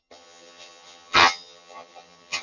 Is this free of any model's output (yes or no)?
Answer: no